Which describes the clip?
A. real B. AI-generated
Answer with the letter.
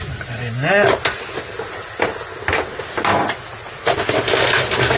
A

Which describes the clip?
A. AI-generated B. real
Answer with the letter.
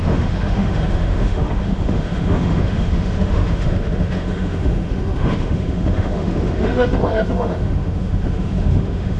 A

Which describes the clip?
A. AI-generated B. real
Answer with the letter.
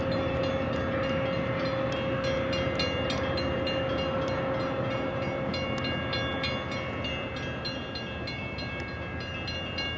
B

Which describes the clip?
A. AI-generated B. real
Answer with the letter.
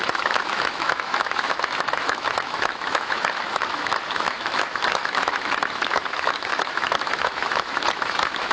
A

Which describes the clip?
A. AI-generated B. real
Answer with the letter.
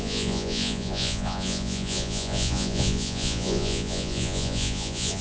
A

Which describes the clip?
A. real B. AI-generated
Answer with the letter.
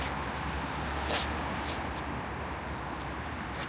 A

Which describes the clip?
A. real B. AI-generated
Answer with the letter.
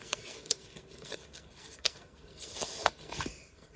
B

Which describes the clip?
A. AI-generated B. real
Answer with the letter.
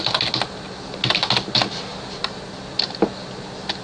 B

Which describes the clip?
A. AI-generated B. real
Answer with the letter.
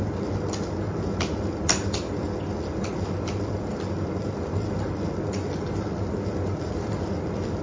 B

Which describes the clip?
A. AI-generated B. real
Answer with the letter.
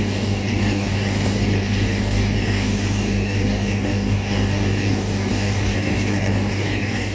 A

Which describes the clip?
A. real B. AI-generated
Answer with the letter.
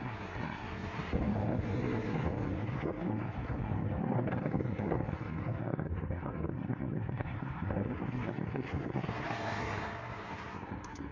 B